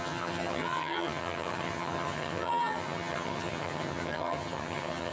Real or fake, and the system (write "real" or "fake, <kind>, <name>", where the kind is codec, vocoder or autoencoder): fake, vocoder, HiFi-GAN